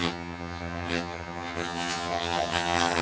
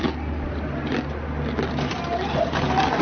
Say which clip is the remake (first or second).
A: first